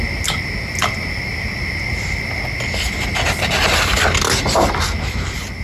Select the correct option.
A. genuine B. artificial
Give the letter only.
A